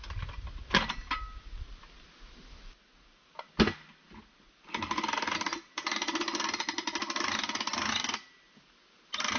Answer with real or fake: real